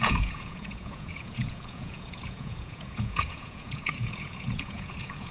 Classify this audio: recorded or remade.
remade